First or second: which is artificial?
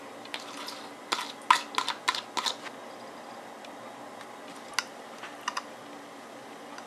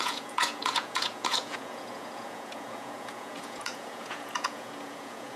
second